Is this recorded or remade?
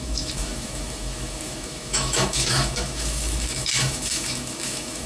remade